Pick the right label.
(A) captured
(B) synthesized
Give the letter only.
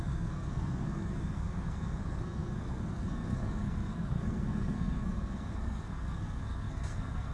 B